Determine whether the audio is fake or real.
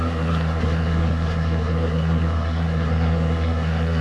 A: fake